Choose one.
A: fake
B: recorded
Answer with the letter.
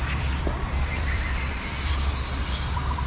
A